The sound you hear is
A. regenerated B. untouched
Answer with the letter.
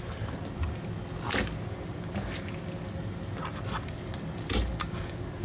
B